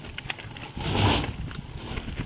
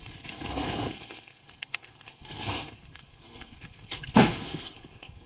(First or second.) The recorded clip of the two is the first